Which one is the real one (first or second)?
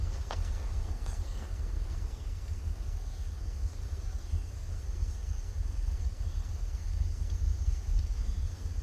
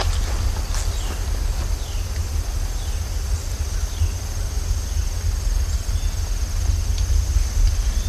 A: second